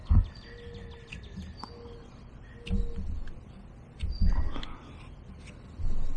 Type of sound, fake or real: real